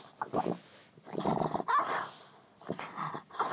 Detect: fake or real real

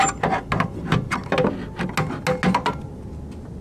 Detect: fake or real real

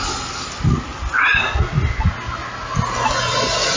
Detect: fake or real real